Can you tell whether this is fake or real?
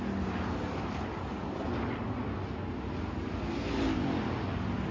real